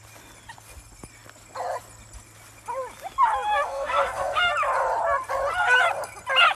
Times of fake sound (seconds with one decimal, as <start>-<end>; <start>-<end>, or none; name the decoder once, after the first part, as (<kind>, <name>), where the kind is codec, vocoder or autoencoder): 3.5-4.5 (codec, SNAC)